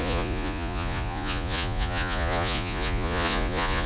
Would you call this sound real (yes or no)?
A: no